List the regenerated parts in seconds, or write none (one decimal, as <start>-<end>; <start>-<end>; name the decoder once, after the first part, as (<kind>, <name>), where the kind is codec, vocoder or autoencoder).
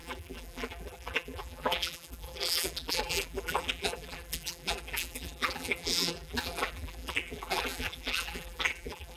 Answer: 0.0-9.2 (vocoder, BigVGAN v2)